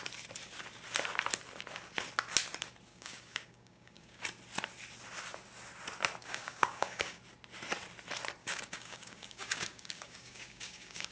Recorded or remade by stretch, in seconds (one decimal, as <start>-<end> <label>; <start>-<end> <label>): 0.0-2.9 recorded; 2.9-4.2 remade; 4.2-6.2 recorded; 6.2-7.2 remade; 7.2-8.4 recorded; 8.4-11.1 remade